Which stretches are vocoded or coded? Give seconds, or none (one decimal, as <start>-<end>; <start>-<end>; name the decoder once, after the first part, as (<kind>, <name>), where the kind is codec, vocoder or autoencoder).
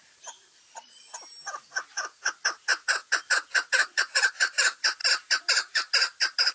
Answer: 0.0-1.1 (vocoder, Vocos); 1.6-5.0